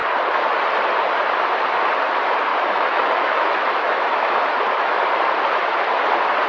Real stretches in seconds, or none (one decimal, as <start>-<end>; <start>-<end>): 0.0-2.5; 5.0-6.5